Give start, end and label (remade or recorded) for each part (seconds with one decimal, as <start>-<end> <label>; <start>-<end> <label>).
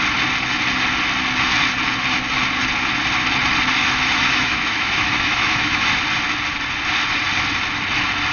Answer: 0.0-3.8 recorded; 3.8-6.0 remade; 6.0-8.3 recorded